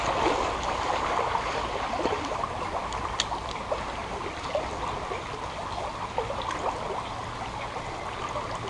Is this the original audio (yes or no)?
yes